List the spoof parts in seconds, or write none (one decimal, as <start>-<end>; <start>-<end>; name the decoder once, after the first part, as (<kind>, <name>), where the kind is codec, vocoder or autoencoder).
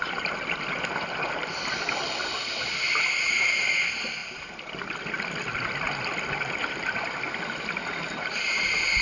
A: none